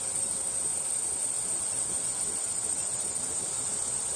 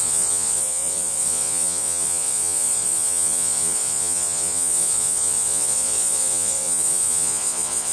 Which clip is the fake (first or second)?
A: second